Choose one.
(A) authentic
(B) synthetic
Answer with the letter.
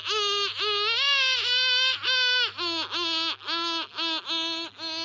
A